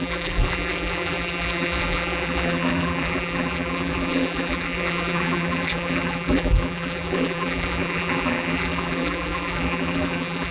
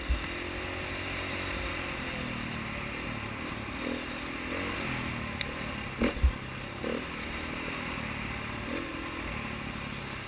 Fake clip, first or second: first